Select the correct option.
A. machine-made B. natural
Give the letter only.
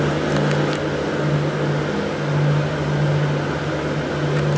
B